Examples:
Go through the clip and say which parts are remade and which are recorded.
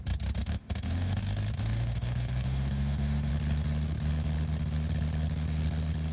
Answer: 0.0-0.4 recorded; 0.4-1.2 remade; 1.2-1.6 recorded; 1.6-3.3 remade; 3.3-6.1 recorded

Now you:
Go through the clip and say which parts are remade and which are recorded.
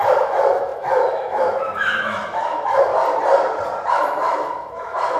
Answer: 0.0-2.9 remade; 2.9-3.9 recorded; 3.9-5.2 remade